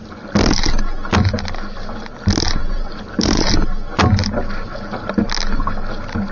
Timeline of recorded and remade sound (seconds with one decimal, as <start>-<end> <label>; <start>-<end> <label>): 0.0-2.6 recorded; 2.6-3.5 remade; 3.5-6.3 recorded